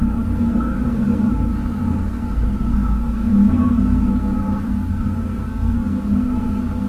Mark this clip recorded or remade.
remade